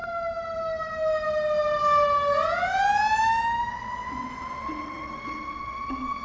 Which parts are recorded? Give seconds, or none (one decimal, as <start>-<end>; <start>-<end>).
0.0-3.7